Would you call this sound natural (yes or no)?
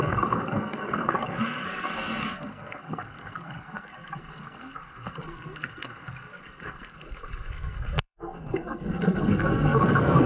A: no